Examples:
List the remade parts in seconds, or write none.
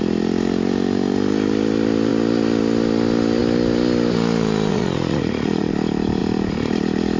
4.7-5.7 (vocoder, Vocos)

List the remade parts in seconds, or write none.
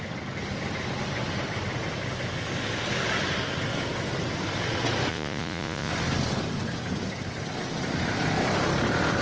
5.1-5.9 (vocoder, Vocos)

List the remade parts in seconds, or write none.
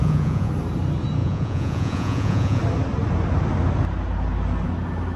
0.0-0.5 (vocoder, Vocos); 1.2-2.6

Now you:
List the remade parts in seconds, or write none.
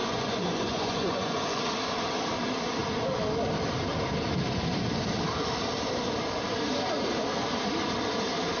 0.0-1.6 (vocoder, Vocos)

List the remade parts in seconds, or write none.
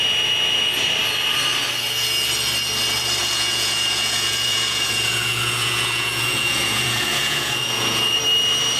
3.2-8.2 (vocoder, Vocos)